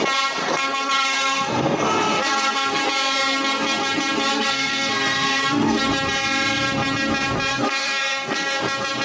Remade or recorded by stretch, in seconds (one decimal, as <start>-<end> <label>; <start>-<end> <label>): 0.0-0.4 recorded; 0.4-2.8 remade; 2.8-4.3 recorded; 4.3-5.8 remade; 5.8-7.5 recorded; 7.5-8.6 remade; 8.6-9.0 recorded